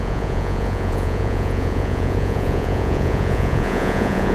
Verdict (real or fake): fake